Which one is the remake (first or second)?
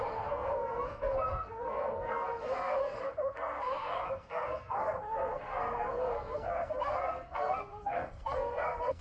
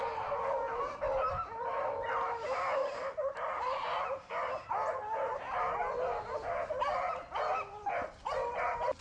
first